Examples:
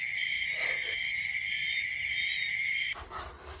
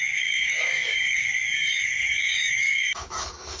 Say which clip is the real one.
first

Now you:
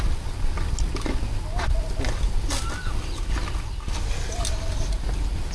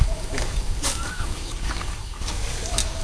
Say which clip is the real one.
first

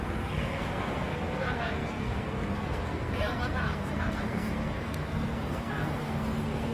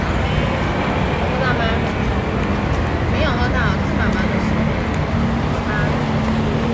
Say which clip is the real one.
second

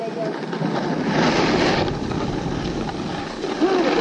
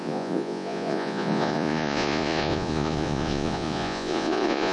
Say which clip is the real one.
first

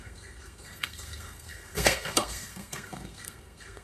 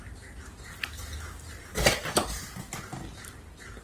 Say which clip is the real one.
second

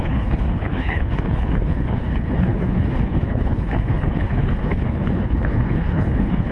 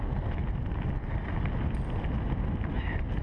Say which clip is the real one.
second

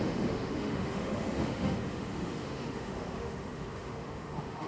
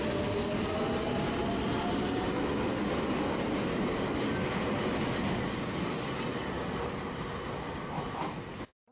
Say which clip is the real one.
second